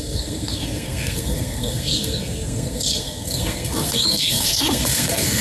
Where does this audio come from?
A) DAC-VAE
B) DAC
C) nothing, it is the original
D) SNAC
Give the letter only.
D